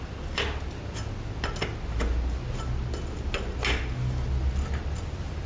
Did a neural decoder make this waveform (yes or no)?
no